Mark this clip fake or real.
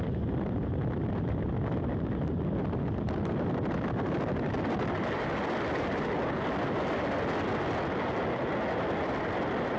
real